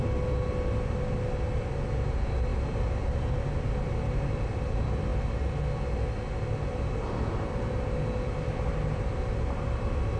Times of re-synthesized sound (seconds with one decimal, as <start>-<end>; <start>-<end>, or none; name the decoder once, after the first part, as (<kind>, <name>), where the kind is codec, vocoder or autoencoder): none